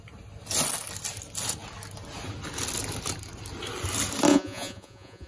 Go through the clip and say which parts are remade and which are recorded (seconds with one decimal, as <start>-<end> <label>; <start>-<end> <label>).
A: 0.0-4.3 recorded; 4.3-5.3 remade